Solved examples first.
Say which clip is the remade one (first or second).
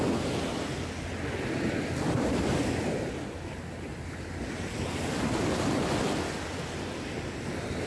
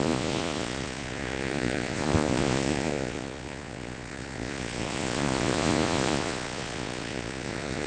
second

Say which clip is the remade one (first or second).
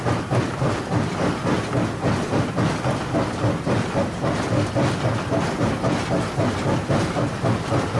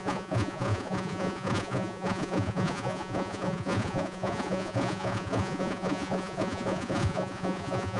second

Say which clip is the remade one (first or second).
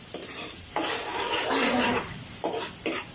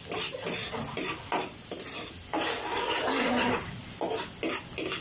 first